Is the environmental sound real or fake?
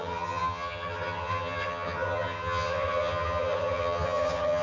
fake